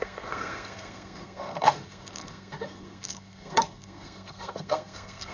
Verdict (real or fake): fake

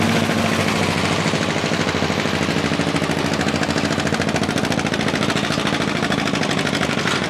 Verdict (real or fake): real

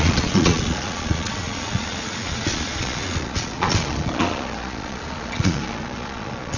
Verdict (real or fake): fake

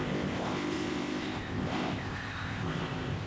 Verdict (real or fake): fake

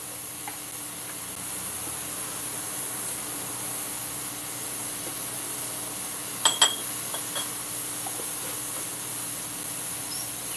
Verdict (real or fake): real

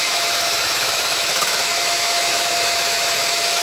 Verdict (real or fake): fake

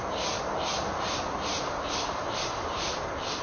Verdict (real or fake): fake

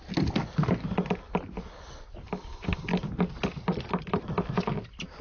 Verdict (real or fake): real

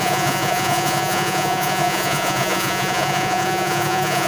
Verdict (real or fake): fake